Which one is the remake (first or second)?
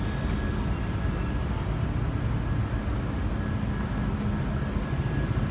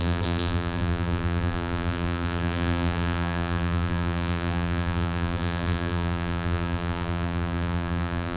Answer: second